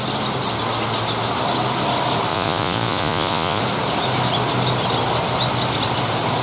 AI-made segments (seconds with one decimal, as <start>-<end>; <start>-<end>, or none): 2.3-3.6